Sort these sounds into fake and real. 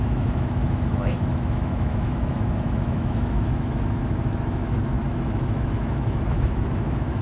fake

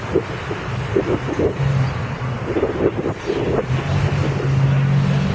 real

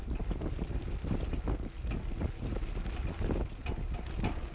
real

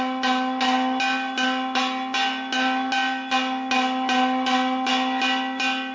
real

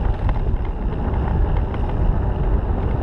real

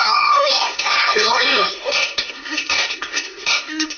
fake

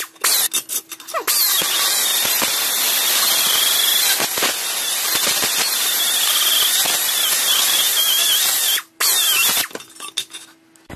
real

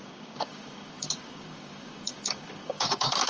fake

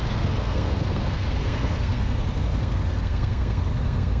fake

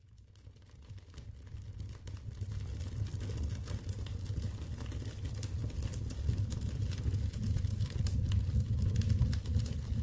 real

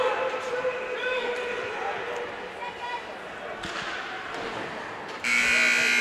real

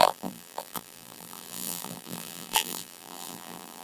fake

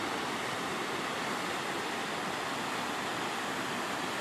real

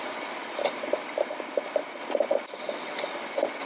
real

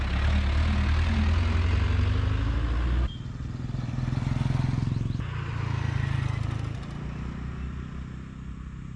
real